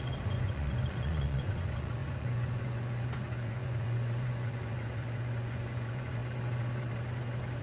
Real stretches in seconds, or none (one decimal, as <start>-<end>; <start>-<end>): 6.2-7.6